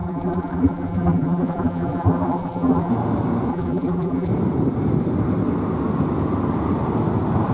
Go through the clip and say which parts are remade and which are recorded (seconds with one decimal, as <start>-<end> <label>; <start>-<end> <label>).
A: 0.0-2.9 remade; 2.9-3.5 recorded; 3.5-4.3 remade; 4.3-7.5 recorded